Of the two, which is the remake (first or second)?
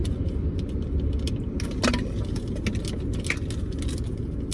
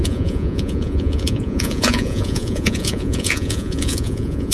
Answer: second